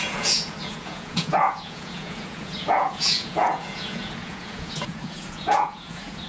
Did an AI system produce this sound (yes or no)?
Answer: yes